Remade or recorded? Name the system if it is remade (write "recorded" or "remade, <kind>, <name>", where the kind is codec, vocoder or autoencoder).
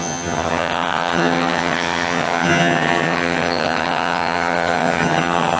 remade, vocoder, HiFi-GAN